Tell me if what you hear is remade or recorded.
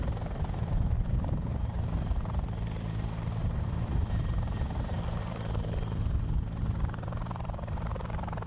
remade